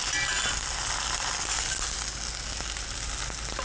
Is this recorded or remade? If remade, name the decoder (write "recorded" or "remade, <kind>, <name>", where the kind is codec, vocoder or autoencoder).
recorded